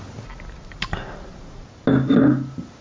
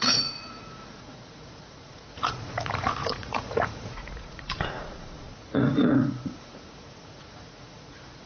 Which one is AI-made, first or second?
second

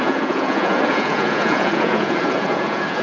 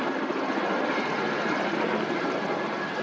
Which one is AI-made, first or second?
first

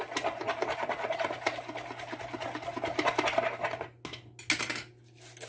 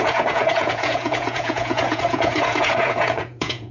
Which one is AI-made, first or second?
second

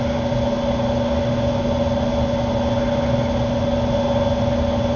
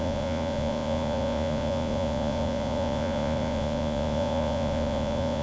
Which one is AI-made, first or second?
second